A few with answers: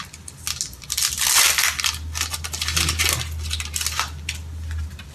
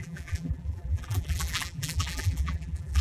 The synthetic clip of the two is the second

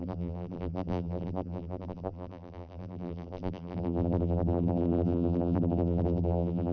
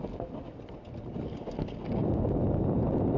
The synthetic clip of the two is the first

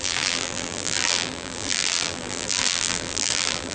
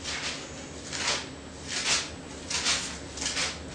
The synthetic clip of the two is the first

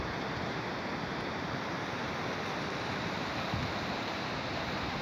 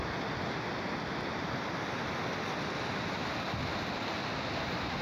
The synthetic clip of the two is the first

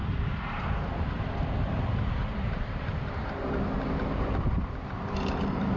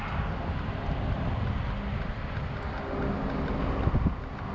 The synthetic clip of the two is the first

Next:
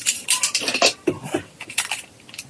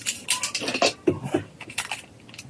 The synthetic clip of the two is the first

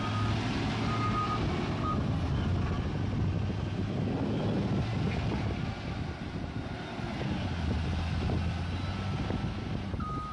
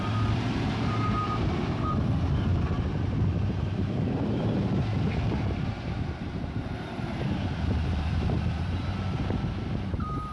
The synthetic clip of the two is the second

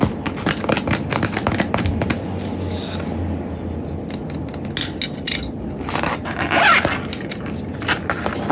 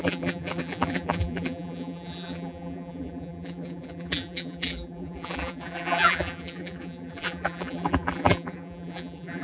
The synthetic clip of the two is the second